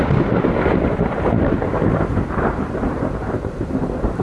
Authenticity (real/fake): fake